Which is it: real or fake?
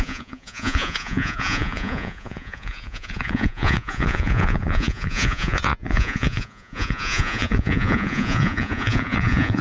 fake